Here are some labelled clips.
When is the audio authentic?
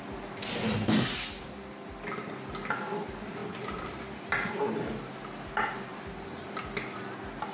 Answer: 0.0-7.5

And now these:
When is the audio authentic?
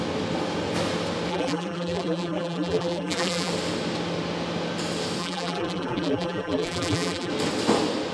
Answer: 0.0-1.3; 3.5-5.2; 7.3-8.1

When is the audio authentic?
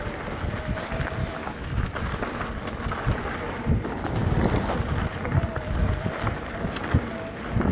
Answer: 0.0-1.2; 1.9-7.7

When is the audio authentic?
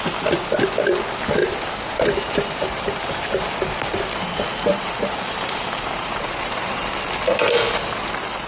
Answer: 0.0-1.4; 3.0-4.7; 6.8-8.5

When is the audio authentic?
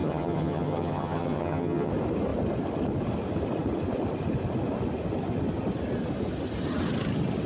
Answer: 1.9-7.5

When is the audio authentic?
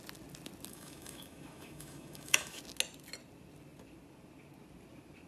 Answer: 0.0-0.7; 2.6-5.3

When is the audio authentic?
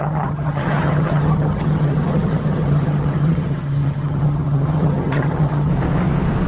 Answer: 5.7-6.5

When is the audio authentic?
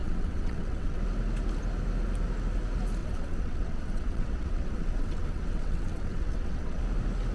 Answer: 1.0-3.0; 6.8-7.3